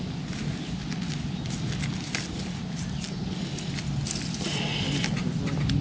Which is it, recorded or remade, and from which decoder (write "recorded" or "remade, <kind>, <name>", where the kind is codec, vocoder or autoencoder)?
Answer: recorded